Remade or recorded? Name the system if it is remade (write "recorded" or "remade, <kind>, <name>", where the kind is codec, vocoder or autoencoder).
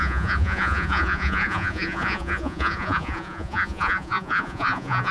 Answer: remade, vocoder, Vocos